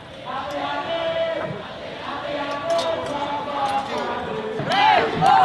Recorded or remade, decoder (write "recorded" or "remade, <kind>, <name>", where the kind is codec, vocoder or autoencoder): recorded